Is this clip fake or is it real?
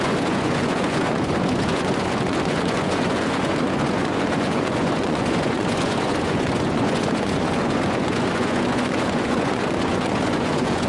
fake